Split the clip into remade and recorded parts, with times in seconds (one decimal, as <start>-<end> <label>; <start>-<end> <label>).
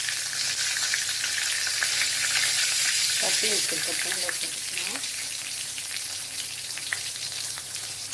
0.0-2.6 recorded; 2.6-8.1 remade